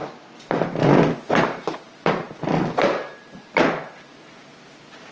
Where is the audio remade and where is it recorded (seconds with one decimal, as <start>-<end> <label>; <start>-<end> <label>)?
0.0-5.1 recorded